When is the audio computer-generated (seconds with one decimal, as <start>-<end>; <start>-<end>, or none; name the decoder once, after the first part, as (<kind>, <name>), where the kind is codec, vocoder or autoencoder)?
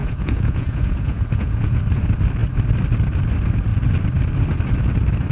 0.0-1.8 (vocoder, Vocos)